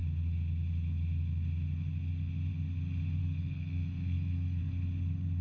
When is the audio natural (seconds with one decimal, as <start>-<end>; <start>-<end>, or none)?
0.0-3.2; 4.6-5.4